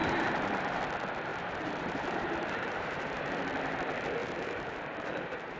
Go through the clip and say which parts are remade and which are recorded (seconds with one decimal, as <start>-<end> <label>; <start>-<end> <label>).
0.0-0.8 remade; 0.8-1.3 recorded; 1.3-3.4 remade; 3.4-4.2 recorded; 4.2-5.6 remade